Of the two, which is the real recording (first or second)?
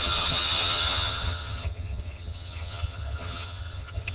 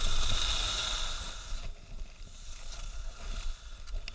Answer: second